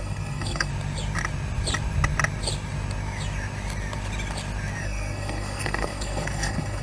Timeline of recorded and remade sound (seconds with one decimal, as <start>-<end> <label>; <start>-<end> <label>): 0.0-0.7 remade; 0.7-4.8 recorded; 4.8-6.8 remade